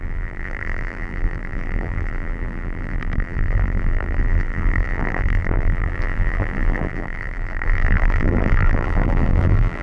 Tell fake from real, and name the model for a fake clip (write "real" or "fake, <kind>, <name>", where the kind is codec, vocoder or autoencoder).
fake, vocoder, BigVGAN v2